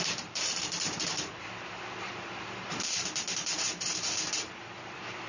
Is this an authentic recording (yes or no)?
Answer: no